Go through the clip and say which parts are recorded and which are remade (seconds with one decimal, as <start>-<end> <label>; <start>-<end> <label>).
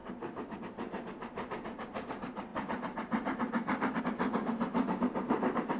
0.0-0.6 remade; 0.6-2.5 recorded; 2.5-4.0 remade; 4.0-5.8 recorded